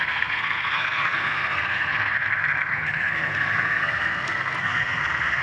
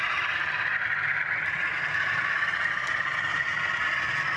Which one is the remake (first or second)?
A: first